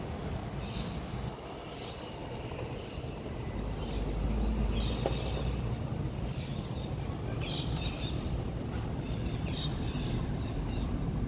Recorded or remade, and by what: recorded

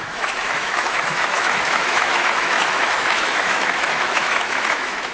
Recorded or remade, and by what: remade, autoencoder, DAC-VAE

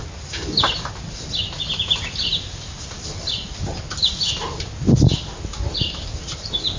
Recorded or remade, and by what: recorded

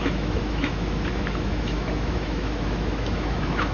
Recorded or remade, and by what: remade, autoencoder, DAC-VAE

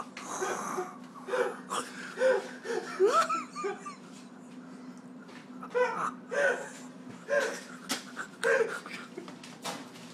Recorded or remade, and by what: recorded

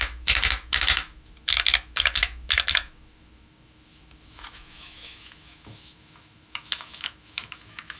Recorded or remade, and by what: remade, autoencoder, DAC-VAE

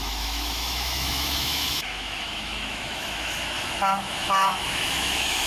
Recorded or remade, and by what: remade, autoencoder, DAC-VAE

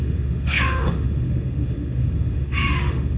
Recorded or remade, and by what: remade, autoencoder, DAC-VAE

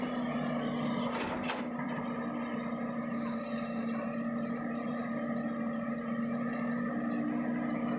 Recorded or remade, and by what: recorded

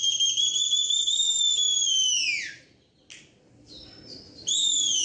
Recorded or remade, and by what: recorded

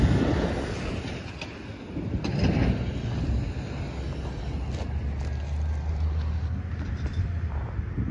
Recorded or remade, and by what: recorded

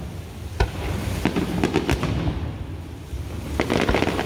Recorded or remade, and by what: recorded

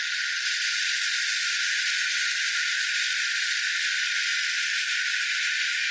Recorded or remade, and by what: recorded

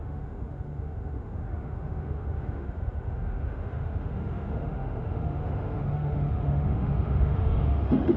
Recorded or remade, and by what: remade, autoencoder, DAC-VAE